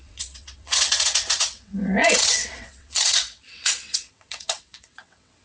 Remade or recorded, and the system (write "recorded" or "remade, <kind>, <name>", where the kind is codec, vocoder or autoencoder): remade, vocoder, WaveNeXt